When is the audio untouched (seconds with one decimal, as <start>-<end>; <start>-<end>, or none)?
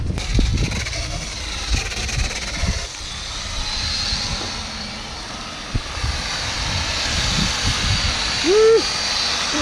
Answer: 0.0-9.6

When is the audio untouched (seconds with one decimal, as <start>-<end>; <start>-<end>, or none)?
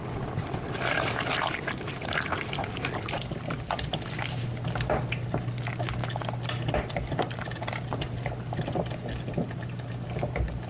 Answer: 6.0-9.9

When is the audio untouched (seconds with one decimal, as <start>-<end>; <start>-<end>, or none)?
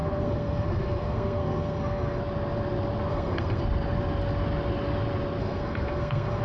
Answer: 2.2-3.1; 3.6-5.4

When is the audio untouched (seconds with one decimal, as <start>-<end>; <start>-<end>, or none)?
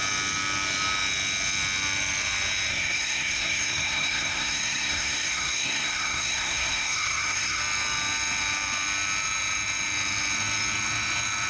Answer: 0.0-2.7; 7.6-11.5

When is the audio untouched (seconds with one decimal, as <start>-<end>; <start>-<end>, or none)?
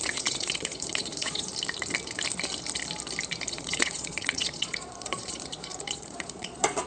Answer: 1.5-3.5